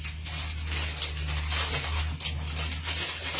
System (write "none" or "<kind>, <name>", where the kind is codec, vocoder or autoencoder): none